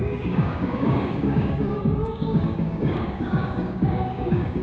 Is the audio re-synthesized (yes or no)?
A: yes